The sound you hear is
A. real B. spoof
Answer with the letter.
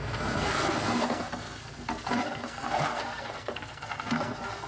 B